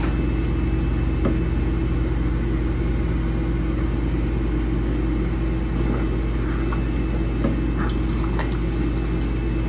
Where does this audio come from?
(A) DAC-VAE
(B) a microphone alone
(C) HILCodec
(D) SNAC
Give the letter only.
B